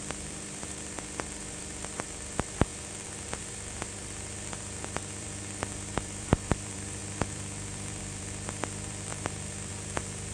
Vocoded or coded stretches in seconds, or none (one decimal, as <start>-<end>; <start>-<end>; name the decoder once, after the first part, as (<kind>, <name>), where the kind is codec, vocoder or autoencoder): 0.0-2.7 (vocoder, BigVGAN v2); 3.4-10.3